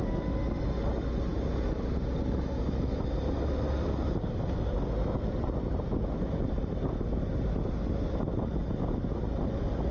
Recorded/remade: recorded